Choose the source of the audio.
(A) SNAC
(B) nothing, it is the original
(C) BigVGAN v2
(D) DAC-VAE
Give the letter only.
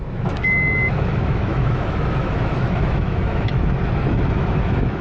D